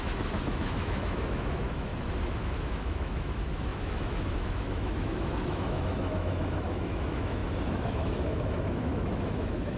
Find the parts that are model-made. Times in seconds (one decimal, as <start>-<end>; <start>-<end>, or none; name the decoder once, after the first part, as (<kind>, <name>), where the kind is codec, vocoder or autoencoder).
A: 0.0-1.9 (autoencoder, DAC-VAE); 2.4-9.8